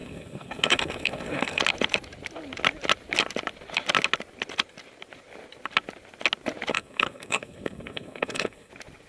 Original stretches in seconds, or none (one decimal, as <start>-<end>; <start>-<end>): 1.6-6.7; 8.7-9.1